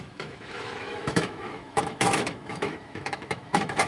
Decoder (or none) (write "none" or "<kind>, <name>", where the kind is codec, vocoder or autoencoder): autoencoder, DAC-VAE